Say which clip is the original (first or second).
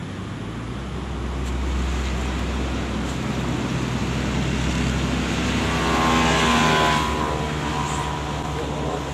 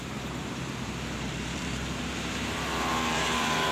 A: first